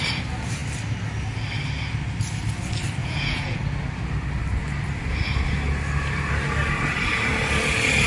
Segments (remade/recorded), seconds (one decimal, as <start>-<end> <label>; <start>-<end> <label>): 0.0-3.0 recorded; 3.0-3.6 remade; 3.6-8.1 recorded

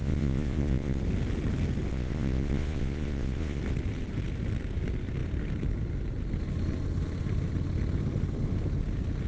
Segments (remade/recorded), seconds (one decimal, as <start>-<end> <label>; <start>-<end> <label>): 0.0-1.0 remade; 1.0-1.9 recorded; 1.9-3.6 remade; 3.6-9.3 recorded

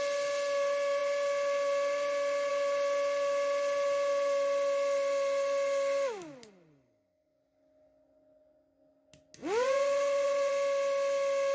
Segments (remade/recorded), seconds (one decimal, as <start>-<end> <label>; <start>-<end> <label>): 0.0-9.4 recorded; 9.4-10.5 remade; 10.5-11.5 recorded

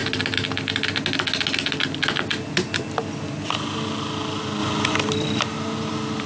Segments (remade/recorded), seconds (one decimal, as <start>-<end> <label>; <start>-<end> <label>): 0.0-6.3 recorded